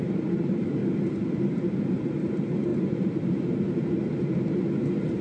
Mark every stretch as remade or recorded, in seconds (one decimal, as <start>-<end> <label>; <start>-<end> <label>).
0.0-0.8 remade; 0.8-1.3 recorded; 1.3-5.2 remade

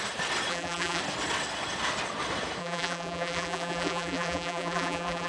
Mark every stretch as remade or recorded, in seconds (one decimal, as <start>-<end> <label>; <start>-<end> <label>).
0.0-0.5 recorded; 0.5-1.0 remade; 1.0-2.6 recorded; 2.6-5.3 remade

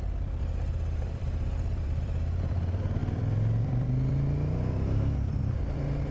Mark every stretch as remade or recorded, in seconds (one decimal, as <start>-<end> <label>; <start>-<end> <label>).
0.0-0.4 remade; 0.4-1.0 recorded; 1.0-6.1 remade

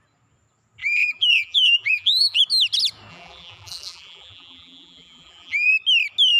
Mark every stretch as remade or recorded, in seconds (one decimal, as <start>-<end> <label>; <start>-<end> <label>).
0.0-0.8 recorded; 0.8-2.4 remade; 2.4-3.1 recorded; 3.1-5.7 remade; 5.7-6.4 recorded

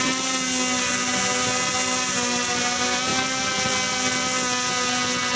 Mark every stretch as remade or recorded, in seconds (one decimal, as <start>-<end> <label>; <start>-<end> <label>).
0.0-5.4 recorded

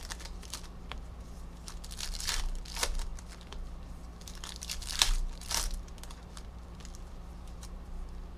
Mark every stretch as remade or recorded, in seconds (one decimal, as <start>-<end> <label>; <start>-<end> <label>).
0.0-8.4 remade

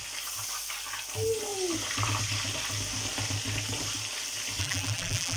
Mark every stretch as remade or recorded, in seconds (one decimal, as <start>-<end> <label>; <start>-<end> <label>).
0.0-4.6 recorded; 4.6-5.4 remade